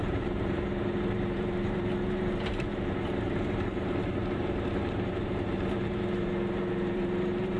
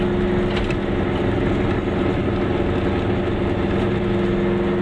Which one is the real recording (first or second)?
second